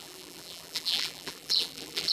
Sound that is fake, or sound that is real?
fake